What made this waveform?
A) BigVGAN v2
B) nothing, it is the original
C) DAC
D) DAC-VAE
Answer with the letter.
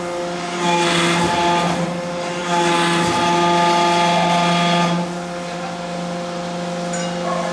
B